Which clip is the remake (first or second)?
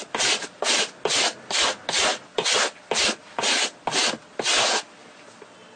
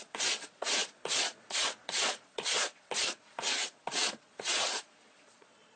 second